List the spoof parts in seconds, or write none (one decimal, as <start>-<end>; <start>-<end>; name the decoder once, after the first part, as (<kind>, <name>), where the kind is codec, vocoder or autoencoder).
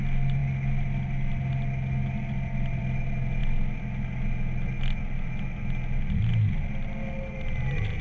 none